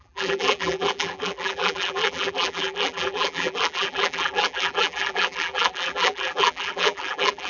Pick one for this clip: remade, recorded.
remade